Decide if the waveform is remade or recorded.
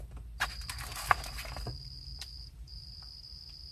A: recorded